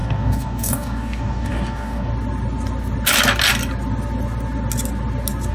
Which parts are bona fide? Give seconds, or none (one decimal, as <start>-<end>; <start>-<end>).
2.1-5.5